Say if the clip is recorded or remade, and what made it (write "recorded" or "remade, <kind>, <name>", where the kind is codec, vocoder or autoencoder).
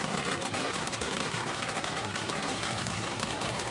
remade, codec, SNAC